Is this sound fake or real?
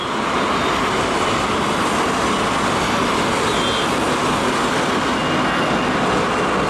real